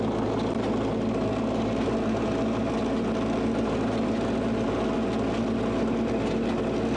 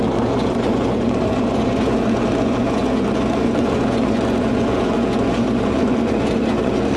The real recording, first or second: first